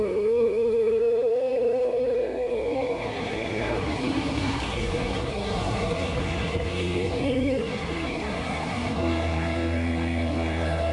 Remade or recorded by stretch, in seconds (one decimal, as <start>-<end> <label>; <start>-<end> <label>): 0.0-10.9 remade